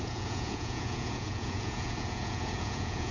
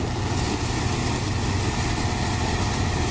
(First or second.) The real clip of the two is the second